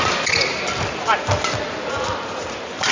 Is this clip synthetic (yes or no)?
no